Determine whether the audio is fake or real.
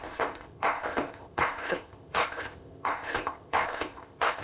fake